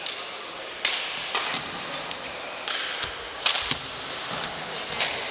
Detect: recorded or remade recorded